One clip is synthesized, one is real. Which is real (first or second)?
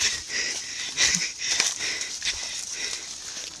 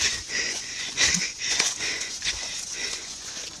first